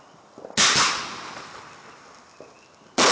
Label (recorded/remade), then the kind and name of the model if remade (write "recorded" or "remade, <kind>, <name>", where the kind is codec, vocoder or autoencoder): recorded